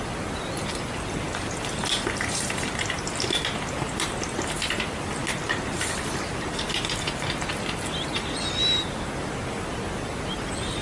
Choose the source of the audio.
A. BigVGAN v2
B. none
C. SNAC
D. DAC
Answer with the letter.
B